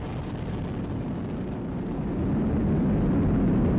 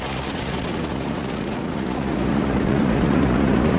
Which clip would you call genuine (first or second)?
first